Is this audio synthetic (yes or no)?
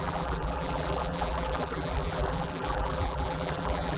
yes